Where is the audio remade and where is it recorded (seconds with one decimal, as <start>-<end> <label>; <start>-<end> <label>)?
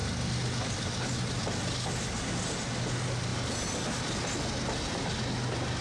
0.0-5.8 recorded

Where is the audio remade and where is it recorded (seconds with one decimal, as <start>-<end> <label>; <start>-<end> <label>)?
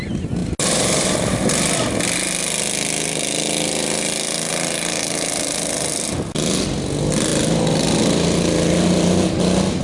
0.0-9.8 recorded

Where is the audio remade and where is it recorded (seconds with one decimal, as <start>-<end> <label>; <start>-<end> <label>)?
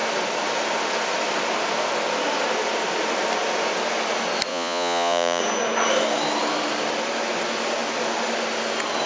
0.0-4.5 recorded; 4.5-5.4 remade; 5.4-9.1 recorded